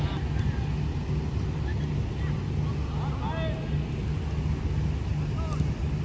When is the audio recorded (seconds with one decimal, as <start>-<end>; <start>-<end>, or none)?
0.0-6.0